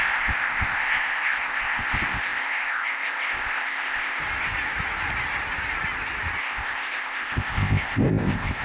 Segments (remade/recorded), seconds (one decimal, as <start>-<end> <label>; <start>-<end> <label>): 0.0-4.2 remade; 4.2-6.4 recorded; 6.4-8.6 remade